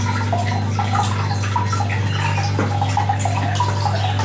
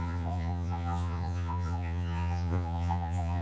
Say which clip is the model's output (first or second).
second